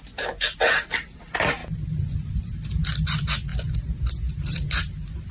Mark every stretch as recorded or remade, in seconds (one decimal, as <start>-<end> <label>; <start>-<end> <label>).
0.0-5.3 recorded